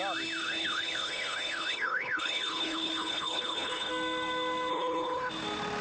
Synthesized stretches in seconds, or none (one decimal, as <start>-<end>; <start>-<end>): 0.4-3.9; 4.7-5.3